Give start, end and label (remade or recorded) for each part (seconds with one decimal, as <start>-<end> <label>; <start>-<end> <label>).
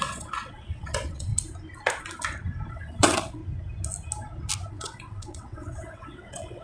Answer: 0.0-1.3 remade; 1.3-2.7 recorded; 2.7-3.4 remade; 3.4-4.7 recorded; 4.7-6.6 remade